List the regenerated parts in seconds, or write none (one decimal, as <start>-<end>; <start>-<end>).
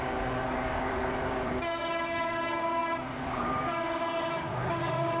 0.0-5.2